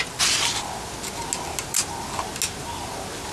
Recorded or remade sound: recorded